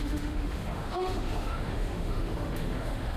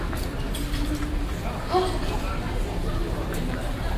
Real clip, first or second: second